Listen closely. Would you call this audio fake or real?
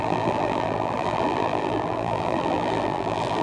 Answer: fake